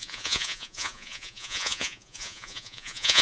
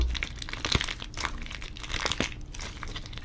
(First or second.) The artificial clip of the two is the first